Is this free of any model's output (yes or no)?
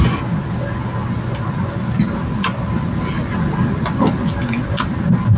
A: yes